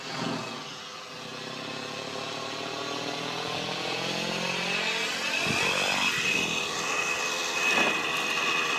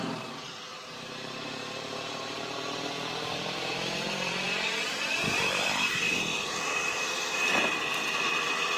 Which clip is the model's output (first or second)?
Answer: second